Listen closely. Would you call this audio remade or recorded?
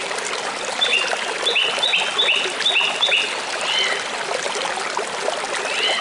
recorded